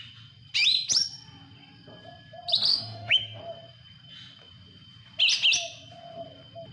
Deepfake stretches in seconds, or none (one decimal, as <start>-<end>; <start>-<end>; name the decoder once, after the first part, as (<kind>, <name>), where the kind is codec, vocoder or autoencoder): 2.7-3.4 (autoencoder, DAC-VAE)